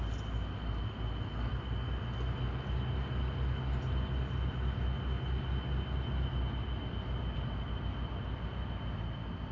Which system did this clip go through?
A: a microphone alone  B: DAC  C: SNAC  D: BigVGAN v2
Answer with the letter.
A